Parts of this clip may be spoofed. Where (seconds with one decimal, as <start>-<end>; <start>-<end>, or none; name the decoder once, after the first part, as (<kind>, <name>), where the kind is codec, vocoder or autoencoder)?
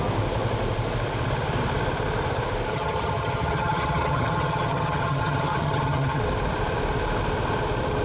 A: 2.7-6.2 (vocoder, HiFi-GAN)